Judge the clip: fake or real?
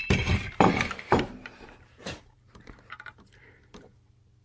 fake